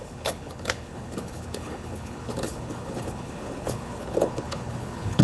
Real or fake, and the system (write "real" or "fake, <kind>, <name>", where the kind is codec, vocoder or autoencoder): fake, codec, HILCodec